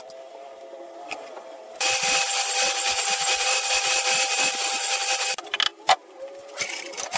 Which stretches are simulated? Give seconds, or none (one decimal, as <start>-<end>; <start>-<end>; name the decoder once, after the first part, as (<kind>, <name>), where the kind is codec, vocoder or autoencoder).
none